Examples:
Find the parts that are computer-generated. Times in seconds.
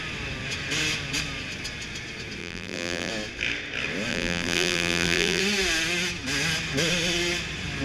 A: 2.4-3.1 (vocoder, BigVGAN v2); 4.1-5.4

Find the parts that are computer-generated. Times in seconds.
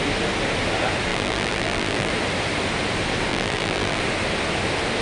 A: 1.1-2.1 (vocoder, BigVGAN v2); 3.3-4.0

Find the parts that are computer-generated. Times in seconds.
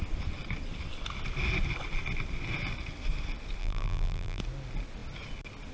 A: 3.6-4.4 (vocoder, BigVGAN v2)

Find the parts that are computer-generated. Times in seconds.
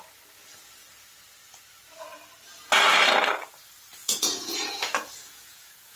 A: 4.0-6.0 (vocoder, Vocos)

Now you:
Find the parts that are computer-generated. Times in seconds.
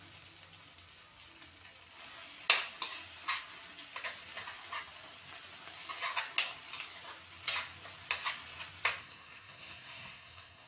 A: 9.0-10.7 (codec, SNAC)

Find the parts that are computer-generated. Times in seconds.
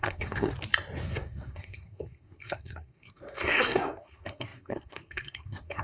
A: 0.0-0.5 (codec, SNAC); 1.0-5.8